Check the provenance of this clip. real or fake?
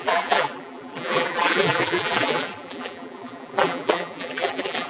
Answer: fake